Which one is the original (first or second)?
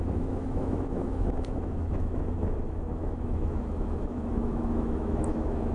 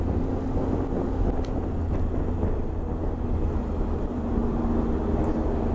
second